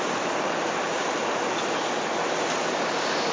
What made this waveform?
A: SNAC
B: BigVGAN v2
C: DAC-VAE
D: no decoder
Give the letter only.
D